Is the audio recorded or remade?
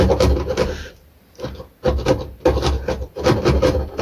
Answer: recorded